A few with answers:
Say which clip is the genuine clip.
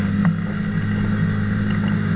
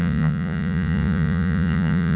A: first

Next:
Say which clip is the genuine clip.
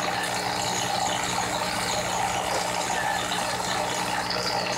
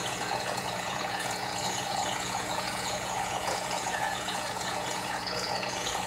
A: first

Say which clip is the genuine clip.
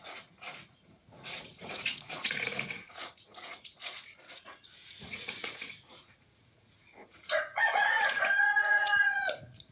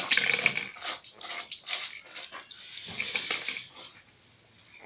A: second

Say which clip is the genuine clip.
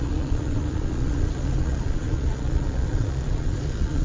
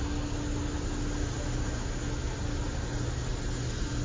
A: second